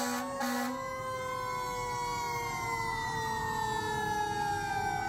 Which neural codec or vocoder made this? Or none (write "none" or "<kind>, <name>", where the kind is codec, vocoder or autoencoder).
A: none